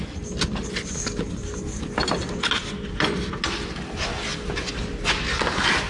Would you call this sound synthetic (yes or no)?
no